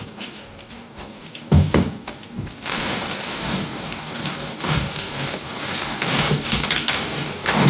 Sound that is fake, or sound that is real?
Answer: fake